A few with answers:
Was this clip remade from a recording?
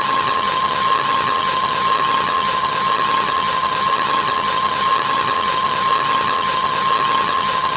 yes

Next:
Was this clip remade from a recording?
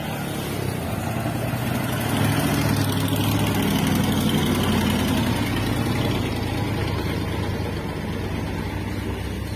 no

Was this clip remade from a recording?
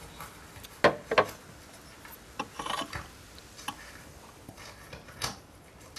no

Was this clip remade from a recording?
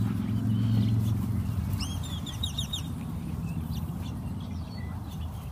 no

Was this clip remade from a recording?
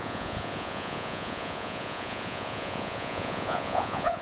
yes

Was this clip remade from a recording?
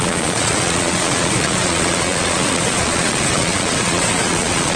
yes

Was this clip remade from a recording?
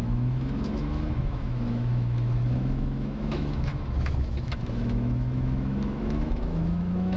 yes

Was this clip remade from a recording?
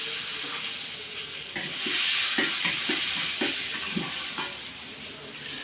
no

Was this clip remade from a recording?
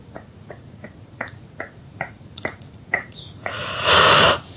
yes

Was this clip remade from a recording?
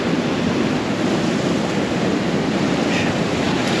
no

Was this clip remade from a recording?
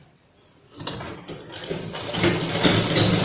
no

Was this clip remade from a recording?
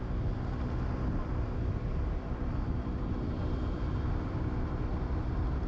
yes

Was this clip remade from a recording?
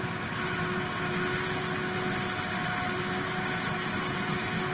no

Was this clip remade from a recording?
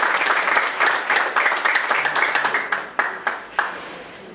yes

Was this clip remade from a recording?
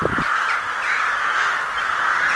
no